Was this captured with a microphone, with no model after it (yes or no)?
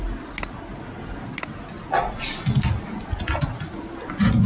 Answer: yes